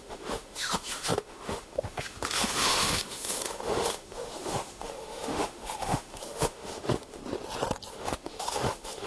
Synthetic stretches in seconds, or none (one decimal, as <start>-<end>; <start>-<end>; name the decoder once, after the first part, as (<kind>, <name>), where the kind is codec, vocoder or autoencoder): 0.0-7.2 (autoencoder, DAC-VAE); 7.9-9.1